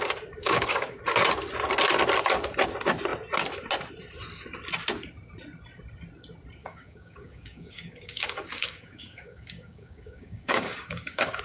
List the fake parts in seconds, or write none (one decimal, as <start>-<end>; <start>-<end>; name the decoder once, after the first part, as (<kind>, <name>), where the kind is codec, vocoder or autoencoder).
0.4-1.0 (codec, DAC); 6.6-11.4